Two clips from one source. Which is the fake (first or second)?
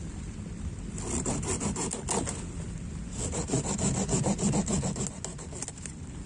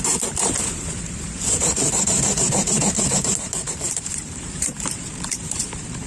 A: second